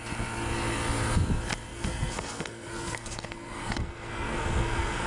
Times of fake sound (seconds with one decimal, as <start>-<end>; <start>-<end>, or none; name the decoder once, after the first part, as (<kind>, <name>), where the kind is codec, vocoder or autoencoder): 1.7-5.1 (codec, SNAC)